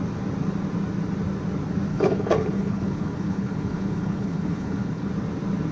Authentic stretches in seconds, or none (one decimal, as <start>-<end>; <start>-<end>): 0.0-1.9; 5.1-5.7